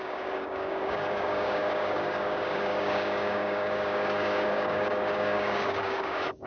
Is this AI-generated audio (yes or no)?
yes